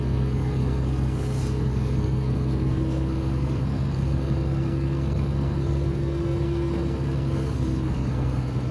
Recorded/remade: remade